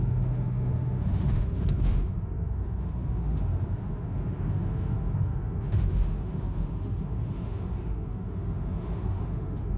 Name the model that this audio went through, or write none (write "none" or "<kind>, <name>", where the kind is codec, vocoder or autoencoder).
autoencoder, DAC-VAE